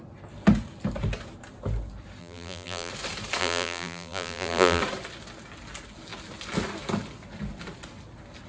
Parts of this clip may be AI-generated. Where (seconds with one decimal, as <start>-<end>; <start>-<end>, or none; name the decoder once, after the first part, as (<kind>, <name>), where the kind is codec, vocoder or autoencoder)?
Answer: 2.2-2.9 (vocoder, BigVGAN v2); 3.4-4.8